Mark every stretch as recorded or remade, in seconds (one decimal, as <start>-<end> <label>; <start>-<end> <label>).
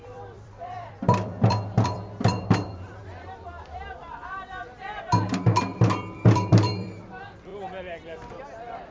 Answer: 0.0-7.5 remade; 7.5-8.9 recorded